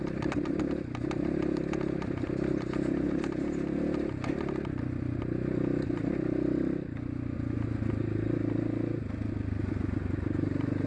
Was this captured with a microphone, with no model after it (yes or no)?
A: yes